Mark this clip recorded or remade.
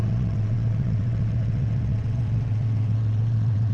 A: remade